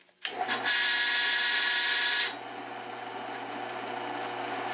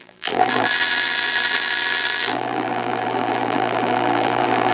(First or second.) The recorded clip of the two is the first